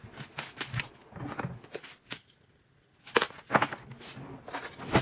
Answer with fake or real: real